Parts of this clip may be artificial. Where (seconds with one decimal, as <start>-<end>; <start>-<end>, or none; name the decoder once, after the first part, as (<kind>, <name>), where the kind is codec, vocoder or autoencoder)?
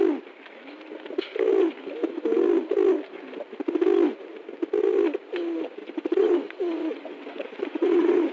5.8-8.3 (vocoder, WaveNeXt)